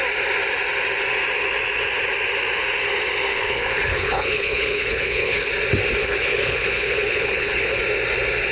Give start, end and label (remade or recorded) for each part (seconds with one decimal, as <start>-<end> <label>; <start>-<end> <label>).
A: 0.0-3.3 recorded; 3.3-5.5 remade; 5.5-6.0 recorded; 6.0-7.8 remade; 7.8-8.5 recorded